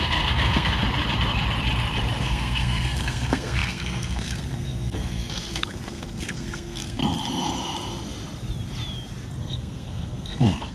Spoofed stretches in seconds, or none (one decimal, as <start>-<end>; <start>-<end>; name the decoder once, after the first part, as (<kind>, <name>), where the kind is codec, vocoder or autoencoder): 0.0-0.8 (codec, SNAC); 2.2-7.0; 9.4-10.7